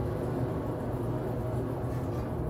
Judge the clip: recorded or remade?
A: recorded